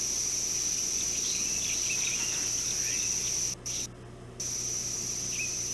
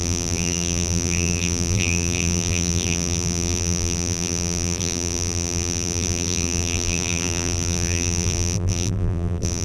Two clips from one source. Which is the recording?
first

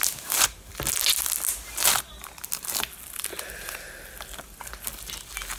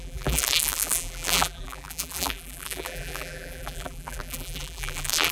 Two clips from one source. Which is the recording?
first